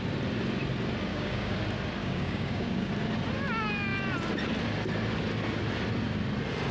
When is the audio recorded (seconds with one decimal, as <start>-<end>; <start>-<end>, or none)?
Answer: 0.0-1.1; 1.6-2.0; 2.9-6.7